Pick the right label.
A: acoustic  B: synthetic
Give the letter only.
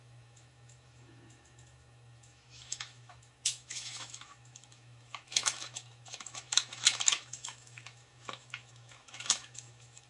B